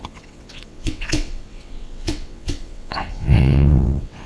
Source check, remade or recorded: remade